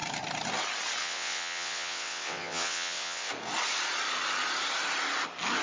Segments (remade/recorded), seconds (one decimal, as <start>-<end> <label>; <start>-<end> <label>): 0.0-1.0 recorded; 1.0-3.3 remade; 3.3-5.6 recorded